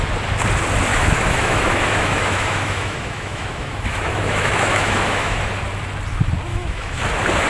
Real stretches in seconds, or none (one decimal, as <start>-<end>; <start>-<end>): 0.0-0.9; 5.4-6.5; 7.0-7.5